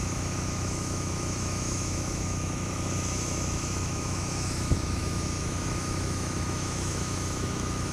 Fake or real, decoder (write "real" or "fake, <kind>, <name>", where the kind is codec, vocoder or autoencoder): fake, autoencoder, DAC-VAE